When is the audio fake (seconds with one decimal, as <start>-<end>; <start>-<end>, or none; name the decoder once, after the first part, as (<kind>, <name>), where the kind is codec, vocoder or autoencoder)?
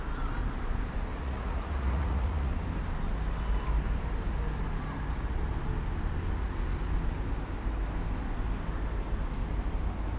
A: 1.1-2.5 (vocoder, Vocos)